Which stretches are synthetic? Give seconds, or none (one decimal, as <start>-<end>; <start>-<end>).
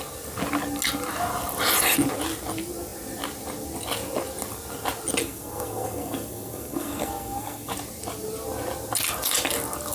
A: 5.2-7.7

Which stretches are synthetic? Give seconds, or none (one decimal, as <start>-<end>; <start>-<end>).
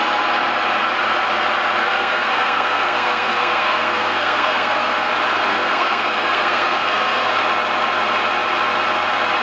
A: 1.8-5.1; 5.5-7.3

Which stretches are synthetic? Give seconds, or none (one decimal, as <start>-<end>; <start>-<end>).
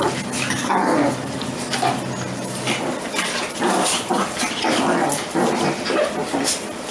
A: none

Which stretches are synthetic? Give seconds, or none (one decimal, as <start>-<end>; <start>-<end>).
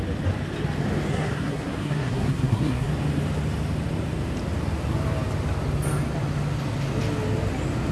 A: 1.1-2.9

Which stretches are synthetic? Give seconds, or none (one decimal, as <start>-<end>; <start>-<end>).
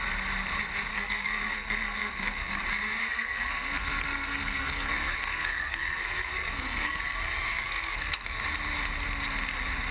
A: 0.9-2.6; 3.0-7.0; 7.5-8.4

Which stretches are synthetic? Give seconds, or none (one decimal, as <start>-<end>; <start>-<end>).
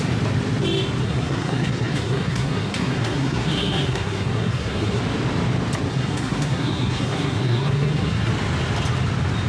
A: 1.0-5.0; 5.9-8.3